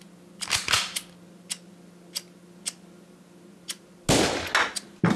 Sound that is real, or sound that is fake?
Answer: real